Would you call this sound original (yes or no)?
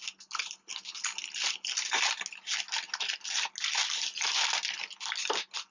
yes